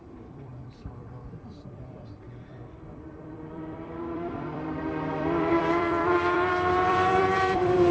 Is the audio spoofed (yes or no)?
yes